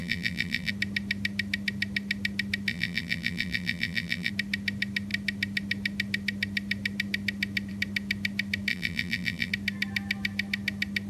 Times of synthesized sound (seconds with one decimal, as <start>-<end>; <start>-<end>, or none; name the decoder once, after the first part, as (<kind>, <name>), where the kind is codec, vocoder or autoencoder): 0.0-0.7 (vocoder, BigVGAN v2); 2.7-4.3; 8.7-9.5

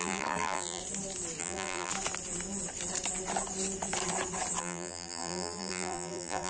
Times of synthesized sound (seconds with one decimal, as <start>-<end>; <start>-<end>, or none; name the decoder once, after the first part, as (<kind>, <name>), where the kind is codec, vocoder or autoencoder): 0.0-0.8 (vocoder, BigVGAN v2); 1.4-1.9; 4.6-6.5